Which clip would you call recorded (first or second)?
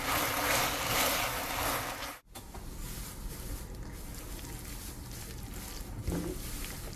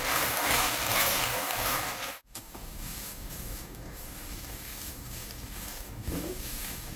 first